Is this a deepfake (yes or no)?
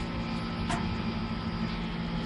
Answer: no